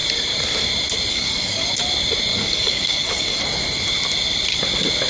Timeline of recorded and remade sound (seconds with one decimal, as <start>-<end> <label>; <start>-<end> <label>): 0.0-1.1 recorded; 1.1-1.7 remade; 1.7-2.3 recorded; 2.3-3.4 remade; 3.4-5.1 recorded